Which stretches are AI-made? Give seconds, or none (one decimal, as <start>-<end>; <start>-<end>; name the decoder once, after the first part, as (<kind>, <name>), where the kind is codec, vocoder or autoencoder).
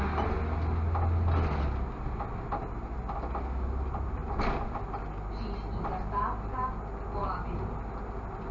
none